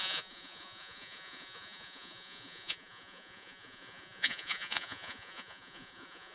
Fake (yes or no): yes